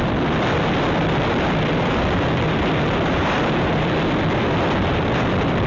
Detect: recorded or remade remade